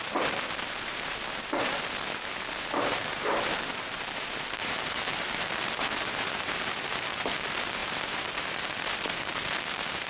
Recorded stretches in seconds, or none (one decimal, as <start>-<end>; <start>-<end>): none